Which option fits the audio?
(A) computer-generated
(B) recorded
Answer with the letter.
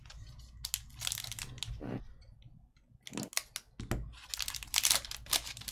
B